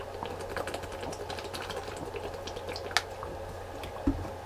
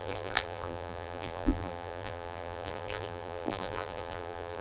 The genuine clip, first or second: first